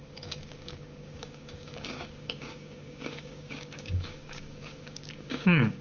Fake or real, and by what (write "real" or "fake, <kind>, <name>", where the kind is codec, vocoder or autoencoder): fake, codec, DAC